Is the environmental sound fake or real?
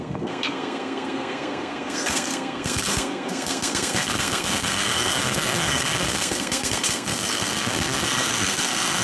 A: fake